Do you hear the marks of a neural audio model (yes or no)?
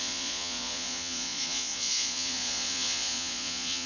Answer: yes